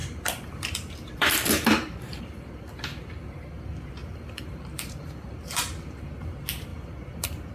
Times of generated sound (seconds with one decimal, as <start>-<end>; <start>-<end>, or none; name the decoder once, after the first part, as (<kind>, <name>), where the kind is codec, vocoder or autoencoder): 0.0-2.2 (vocoder, BigVGAN v2); 4.0-6.1